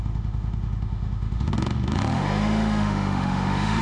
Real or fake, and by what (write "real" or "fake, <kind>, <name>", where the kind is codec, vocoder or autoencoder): fake, autoencoder, DAC-VAE